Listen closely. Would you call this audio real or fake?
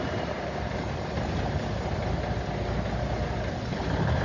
real